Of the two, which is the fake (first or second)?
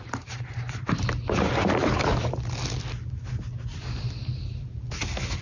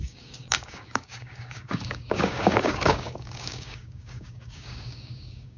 second